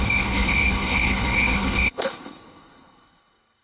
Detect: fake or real fake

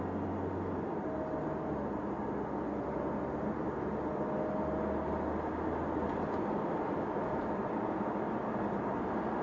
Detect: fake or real real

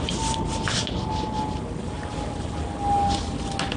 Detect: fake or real real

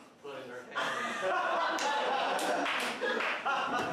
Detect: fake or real real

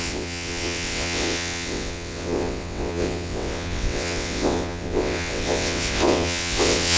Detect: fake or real fake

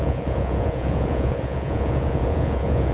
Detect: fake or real fake